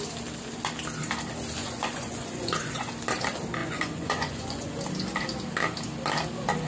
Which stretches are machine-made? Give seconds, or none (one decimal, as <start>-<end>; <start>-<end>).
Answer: 1.6-2.9; 3.6-4.7